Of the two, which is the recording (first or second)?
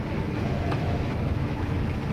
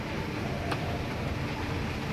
second